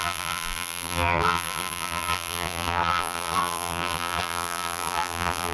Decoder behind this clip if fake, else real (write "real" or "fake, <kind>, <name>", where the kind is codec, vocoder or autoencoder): fake, vocoder, BigVGAN v2